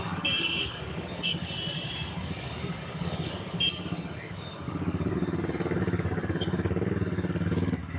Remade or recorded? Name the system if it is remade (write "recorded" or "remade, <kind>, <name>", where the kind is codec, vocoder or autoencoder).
remade, codec, DAC